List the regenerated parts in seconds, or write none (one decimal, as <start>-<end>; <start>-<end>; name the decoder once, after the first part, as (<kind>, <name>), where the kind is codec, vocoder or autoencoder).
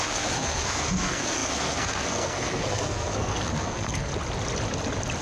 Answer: 0.0-4.1 (codec, SNAC)